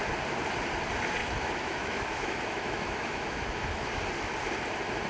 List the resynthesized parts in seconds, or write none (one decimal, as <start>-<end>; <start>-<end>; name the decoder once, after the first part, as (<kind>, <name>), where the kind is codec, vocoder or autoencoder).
1.2-3.9 (autoencoder, DAC-VAE)